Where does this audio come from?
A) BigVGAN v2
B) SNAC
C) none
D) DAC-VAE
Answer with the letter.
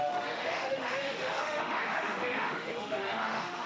D